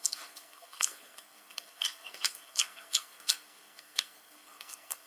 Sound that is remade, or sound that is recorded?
remade